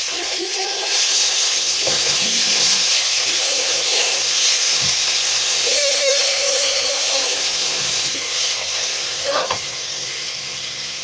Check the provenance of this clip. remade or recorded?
remade